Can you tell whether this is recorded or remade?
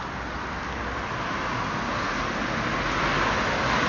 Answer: recorded